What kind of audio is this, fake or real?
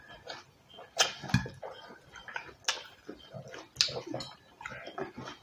real